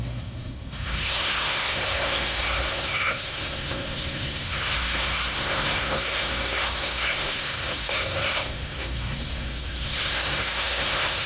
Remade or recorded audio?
remade